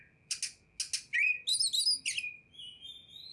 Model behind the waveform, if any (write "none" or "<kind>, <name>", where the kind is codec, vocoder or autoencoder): none